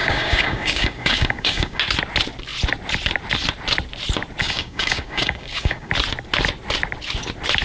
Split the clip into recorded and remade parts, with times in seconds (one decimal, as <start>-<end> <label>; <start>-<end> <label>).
0.0-1.8 remade; 1.8-4.4 recorded; 4.4-5.9 remade; 5.9-7.6 recorded